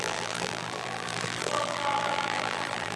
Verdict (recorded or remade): remade